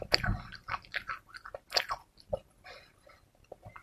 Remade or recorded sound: recorded